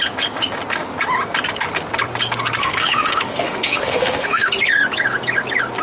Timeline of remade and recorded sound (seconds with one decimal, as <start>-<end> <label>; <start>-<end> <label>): 0.0-2.6 recorded; 2.6-4.5 remade; 4.5-5.8 recorded